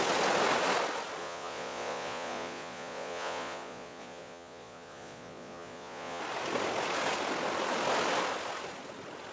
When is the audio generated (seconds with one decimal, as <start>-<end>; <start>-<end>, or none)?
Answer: 1.2-6.2